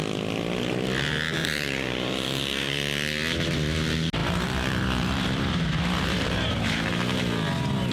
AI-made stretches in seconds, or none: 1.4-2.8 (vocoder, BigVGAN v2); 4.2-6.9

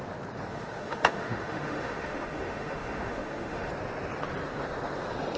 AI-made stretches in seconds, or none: 0.5-3.7 (autoencoder, DAC-VAE)

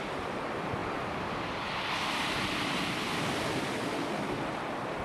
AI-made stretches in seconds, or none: none

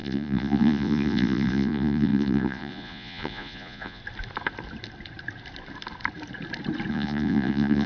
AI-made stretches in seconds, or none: 0.0-4.0 (vocoder, Vocos); 6.9-7.9

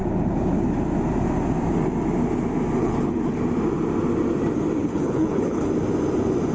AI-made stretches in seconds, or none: 2.8-3.4 (codec, HILCodec); 4.8-5.7

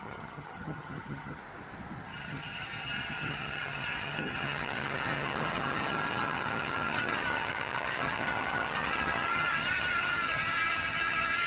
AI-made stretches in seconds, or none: 0.0-1.4 (vocoder, HiFi-GAN); 2.0-11.5

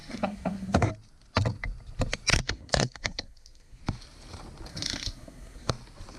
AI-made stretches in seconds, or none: 0.0-0.9 (codec, SNAC); 2.3-3.8; 4.7-5.7

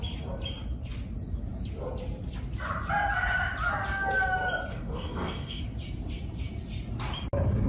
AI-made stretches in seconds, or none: 4.7-5.6 (codec, DAC)